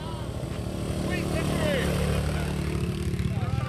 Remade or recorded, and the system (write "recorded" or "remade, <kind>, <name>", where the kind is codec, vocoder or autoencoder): recorded